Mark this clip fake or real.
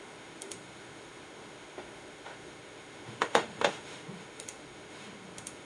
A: fake